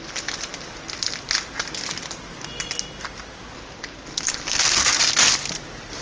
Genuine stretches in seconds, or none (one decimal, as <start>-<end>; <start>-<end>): 0.0-6.0